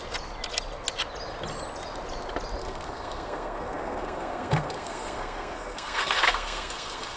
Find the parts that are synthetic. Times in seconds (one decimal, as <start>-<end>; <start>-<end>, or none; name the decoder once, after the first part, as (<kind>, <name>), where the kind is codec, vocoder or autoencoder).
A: 2.6-7.2 (codec, SNAC)